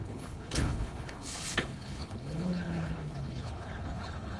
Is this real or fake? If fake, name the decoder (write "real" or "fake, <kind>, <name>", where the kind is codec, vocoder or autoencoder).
fake, codec, HILCodec